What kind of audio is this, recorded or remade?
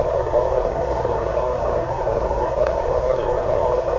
remade